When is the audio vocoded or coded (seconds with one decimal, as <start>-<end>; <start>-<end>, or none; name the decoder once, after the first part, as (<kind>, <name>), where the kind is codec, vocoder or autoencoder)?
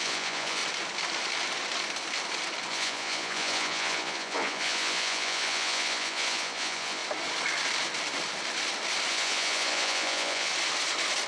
0.0-0.6 (vocoder, Vocos); 2.7-7.0; 9.1-10.5